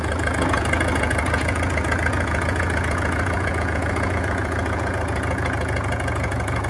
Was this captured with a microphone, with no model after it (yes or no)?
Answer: no